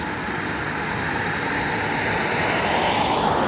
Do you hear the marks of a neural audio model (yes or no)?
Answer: no